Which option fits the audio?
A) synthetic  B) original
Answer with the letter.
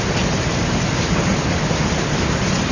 B